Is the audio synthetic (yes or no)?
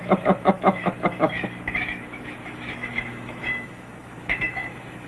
yes